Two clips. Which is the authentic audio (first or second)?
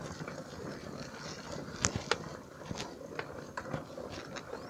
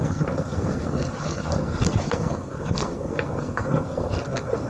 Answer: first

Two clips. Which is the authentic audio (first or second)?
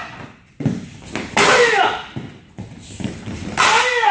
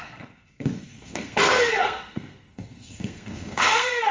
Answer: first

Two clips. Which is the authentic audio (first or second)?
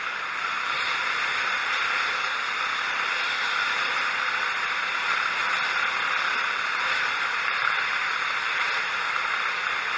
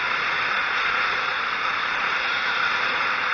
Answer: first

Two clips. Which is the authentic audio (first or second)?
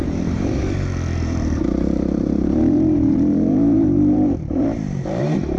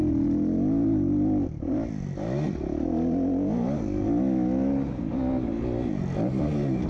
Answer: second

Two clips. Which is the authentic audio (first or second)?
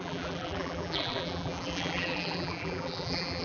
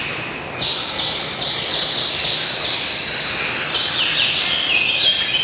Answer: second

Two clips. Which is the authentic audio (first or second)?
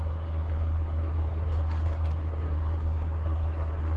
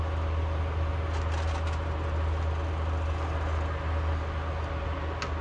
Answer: second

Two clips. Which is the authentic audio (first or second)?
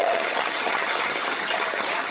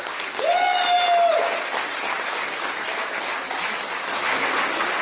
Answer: second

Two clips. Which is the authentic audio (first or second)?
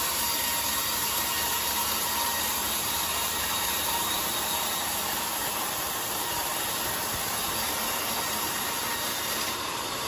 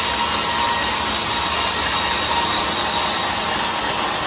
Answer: second